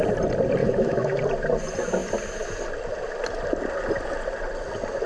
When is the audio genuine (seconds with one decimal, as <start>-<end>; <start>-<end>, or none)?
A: 0.0-0.6; 1.2-5.1